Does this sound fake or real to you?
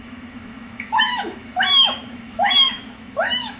fake